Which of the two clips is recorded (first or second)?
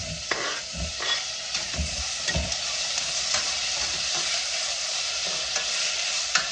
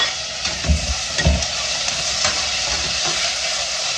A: second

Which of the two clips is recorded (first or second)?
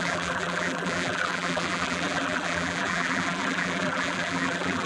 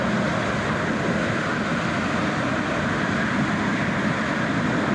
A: second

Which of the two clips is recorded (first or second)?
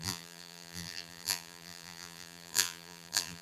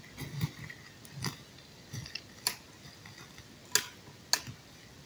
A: second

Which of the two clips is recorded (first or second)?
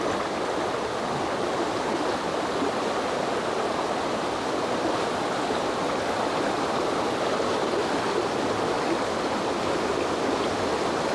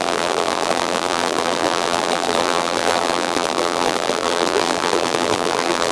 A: first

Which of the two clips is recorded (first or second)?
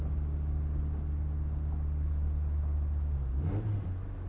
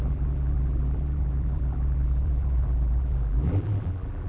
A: first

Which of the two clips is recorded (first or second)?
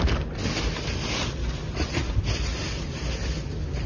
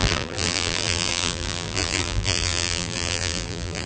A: first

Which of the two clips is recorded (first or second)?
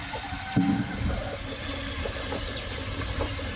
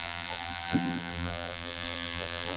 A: first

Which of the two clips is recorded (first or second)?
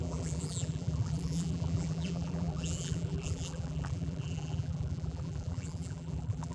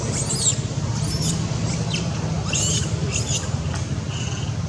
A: second